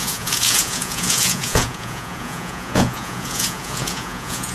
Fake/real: fake